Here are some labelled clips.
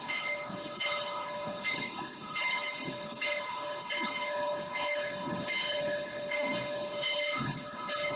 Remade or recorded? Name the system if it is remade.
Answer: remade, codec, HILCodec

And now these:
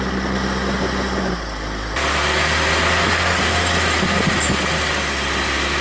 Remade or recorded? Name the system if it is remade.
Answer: recorded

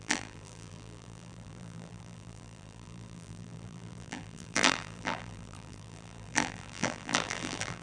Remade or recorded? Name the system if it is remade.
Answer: remade, vocoder, BigVGAN v2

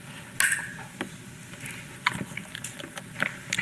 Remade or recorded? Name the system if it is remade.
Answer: recorded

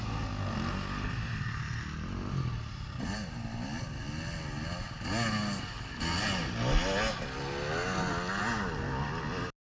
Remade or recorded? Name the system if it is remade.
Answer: recorded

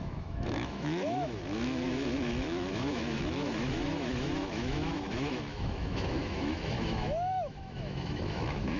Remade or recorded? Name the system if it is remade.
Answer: remade, autoencoder, DAC-VAE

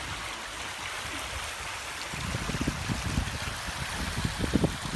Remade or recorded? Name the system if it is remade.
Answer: recorded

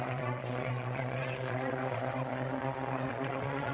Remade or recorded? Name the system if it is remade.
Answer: remade, vocoder, Vocos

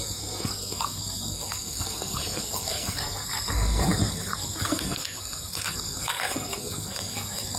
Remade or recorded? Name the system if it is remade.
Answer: remade, codec, SNAC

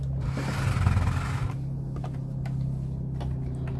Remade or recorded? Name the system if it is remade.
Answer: recorded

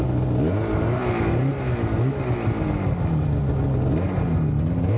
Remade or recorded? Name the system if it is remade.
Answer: recorded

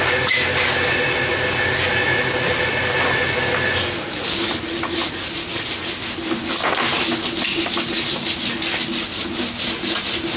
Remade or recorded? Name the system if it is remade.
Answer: recorded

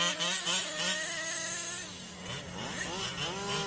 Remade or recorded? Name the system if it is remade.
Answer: recorded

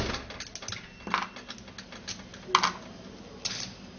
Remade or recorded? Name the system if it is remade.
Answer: recorded